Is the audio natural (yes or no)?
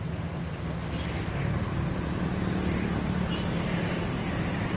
yes